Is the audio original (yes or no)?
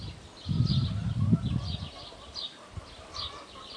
yes